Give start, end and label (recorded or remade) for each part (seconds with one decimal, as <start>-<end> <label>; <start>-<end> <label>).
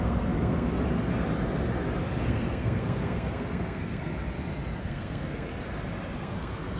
0.0-0.8 remade; 0.8-2.2 recorded; 2.2-4.0 remade; 4.0-4.8 recorded; 4.8-5.5 remade; 5.5-6.2 recorded; 6.2-6.8 remade